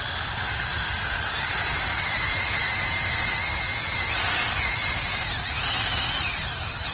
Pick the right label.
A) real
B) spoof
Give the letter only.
A